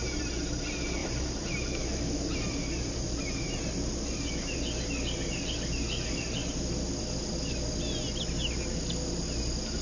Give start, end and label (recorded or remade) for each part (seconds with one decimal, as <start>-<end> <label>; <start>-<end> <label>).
0.0-1.0 recorded; 1.0-4.3 remade; 4.3-9.8 recorded